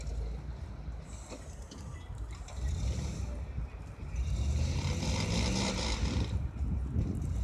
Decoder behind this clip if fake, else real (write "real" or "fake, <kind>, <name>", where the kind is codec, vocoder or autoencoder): real